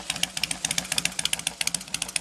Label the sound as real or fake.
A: real